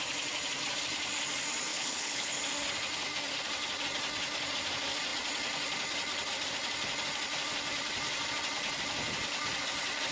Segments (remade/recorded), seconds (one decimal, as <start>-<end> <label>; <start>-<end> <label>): 0.0-1.7 recorded; 1.7-2.4 remade; 2.4-10.1 recorded